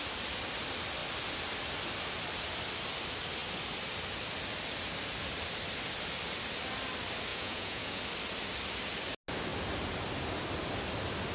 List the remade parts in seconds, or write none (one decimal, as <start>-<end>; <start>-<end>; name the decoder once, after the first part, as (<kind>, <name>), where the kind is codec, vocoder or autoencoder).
7.3-8.0 (vocoder, Vocos)